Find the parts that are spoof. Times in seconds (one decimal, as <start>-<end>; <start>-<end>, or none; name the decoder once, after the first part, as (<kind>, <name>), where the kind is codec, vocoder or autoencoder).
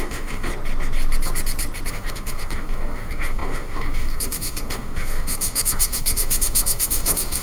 0.0-0.5 (codec, DAC); 1.9-7.4